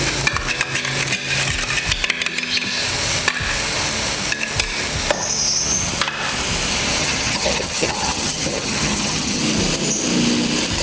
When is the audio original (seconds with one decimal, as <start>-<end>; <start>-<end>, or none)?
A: 0.0-7.0; 9.4-10.8